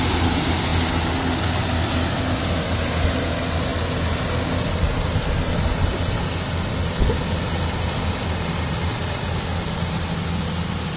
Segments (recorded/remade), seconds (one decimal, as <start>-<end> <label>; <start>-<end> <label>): 0.0-11.0 recorded